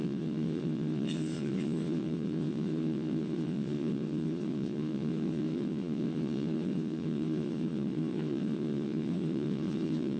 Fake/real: fake